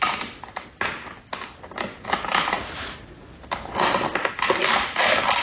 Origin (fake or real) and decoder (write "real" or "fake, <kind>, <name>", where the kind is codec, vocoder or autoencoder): real